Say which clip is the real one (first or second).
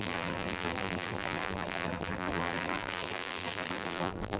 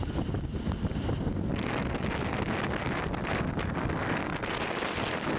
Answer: second